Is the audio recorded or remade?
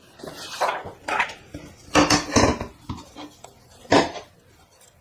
recorded